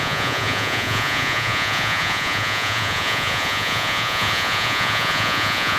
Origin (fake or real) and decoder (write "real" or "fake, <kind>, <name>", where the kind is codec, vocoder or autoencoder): fake, vocoder, Vocos